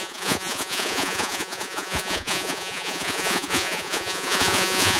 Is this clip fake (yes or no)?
yes